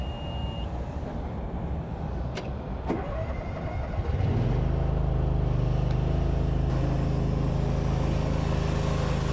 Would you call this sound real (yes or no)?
yes